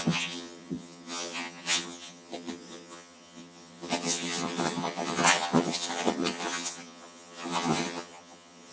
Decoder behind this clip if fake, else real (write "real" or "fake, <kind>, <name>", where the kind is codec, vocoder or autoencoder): fake, vocoder, HiFi-GAN